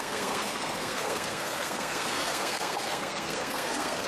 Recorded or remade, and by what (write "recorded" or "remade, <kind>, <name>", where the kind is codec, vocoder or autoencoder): remade, codec, SNAC